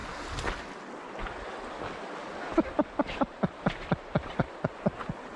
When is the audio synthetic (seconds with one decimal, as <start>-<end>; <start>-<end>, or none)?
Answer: 2.5-4.7